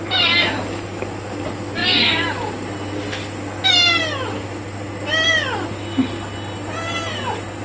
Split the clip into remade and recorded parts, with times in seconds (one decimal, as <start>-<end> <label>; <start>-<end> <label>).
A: 0.0-7.6 recorded